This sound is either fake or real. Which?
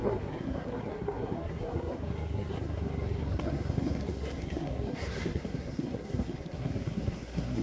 fake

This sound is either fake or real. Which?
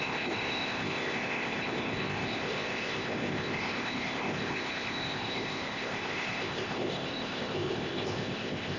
fake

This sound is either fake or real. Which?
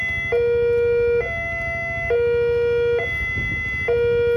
real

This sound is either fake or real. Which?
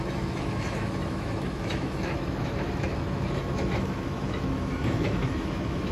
fake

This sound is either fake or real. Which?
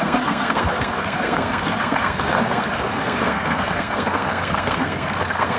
fake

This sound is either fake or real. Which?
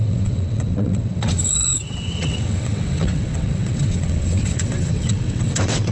fake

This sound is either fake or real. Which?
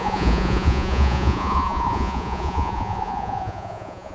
fake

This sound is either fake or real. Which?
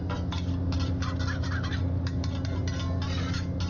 real